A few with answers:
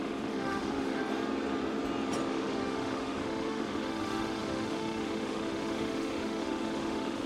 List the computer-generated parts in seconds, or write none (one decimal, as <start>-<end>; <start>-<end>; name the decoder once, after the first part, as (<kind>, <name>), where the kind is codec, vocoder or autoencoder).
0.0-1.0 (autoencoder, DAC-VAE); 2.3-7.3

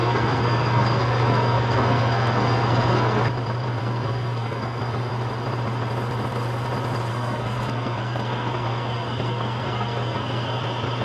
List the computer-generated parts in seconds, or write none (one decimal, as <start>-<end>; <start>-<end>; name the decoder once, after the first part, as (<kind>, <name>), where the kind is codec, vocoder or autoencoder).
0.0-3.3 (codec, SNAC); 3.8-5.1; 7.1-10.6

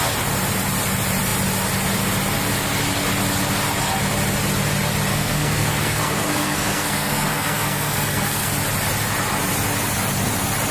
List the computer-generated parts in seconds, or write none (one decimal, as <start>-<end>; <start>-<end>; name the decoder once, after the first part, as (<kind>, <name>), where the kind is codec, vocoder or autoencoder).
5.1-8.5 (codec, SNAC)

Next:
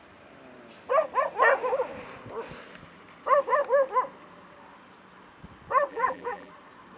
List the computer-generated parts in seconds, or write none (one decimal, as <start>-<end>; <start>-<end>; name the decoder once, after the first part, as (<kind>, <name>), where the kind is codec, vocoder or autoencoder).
5.9-6.5 (vocoder, BigVGAN v2)

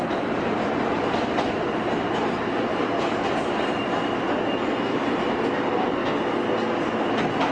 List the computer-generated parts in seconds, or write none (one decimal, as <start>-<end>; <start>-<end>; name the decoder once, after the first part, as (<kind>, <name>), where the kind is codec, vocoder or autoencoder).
none

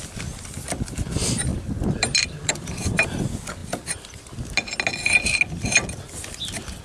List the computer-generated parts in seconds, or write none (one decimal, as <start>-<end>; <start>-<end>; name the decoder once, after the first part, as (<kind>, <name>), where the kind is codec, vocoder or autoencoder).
1.5-3.2 (vocoder, BigVGAN v2)

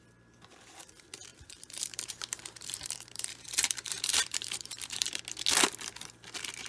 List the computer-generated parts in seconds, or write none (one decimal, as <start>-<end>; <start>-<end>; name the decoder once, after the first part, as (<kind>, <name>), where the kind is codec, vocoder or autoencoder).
1.3-5.2 (vocoder, BigVGAN v2)

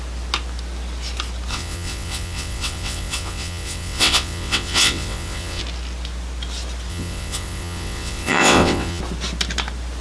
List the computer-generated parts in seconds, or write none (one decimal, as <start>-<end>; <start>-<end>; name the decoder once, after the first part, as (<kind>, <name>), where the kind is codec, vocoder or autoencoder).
1.5-5.6 (vocoder, WaveNeXt); 6.9-9.0